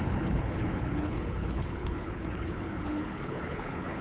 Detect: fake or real fake